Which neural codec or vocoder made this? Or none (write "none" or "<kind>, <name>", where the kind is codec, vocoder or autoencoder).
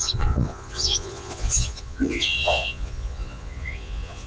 vocoder, Vocos